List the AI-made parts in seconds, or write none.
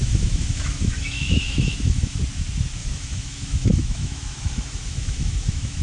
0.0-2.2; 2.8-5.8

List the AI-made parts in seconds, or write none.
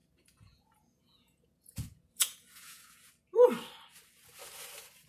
0.0-3.1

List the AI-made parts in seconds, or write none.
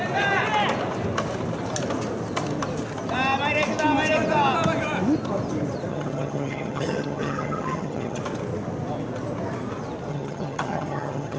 5.9-8.2; 10.1-11.4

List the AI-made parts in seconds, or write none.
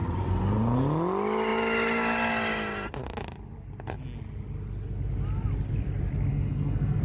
6.3-7.0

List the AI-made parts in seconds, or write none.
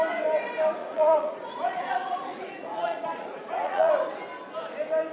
0.8-3.9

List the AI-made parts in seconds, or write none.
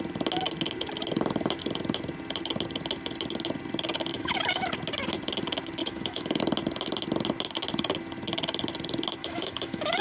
4.1-4.7; 5.8-6.4; 9.2-10.0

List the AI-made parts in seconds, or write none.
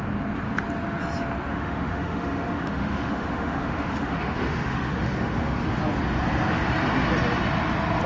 1.5-5.7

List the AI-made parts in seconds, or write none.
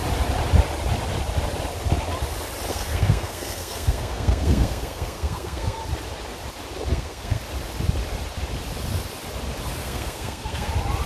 2.7-5.8; 6.9-7.4; 9.8-10.7